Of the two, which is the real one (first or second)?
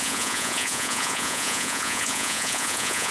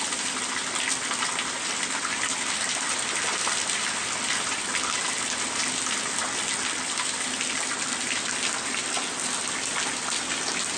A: second